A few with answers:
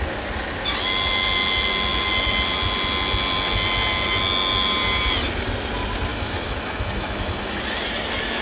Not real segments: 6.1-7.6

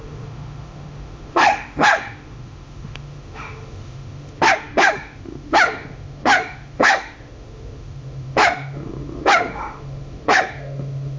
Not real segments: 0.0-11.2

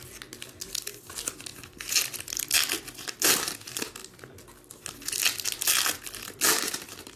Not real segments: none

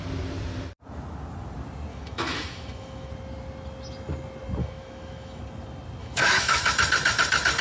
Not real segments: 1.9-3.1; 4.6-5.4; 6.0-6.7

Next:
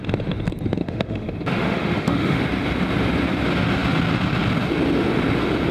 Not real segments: 0.8-2.4